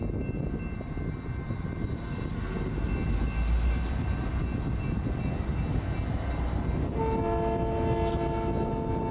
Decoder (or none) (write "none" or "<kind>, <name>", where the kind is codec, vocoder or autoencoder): none